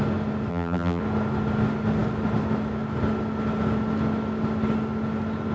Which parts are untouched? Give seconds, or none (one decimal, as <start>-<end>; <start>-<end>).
0.0-0.5; 1.0-5.5

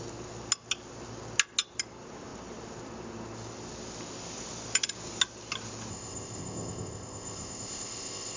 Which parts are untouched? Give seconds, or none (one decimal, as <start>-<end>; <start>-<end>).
0.0-5.9

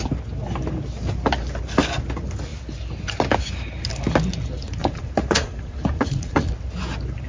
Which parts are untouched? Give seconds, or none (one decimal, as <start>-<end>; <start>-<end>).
0.0-4.8; 6.5-7.3